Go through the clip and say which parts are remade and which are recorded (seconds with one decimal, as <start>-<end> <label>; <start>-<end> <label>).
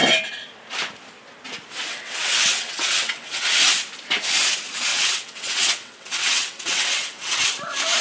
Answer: 0.0-1.9 recorded; 1.9-3.6 remade; 3.6-4.9 recorded; 4.9-7.5 remade; 7.5-8.0 recorded